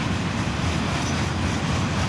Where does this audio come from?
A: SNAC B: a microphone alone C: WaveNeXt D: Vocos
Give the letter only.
B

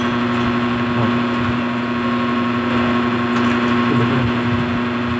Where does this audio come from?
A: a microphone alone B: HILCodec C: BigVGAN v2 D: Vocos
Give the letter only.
A